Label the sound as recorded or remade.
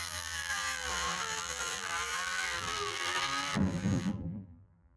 remade